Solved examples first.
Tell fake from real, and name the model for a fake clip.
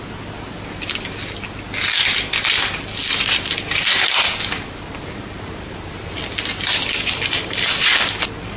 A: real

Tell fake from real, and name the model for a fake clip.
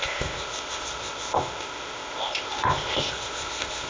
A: fake, codec, ZipCodec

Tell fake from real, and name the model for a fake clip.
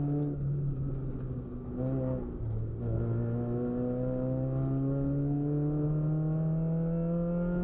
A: real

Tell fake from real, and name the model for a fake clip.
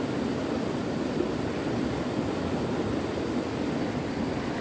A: real